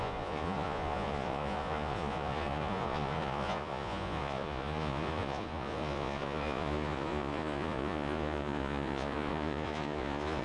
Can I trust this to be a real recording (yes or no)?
no